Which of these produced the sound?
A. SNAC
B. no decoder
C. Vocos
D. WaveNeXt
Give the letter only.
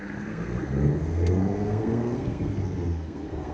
A